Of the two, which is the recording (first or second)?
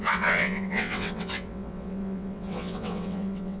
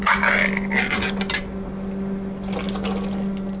second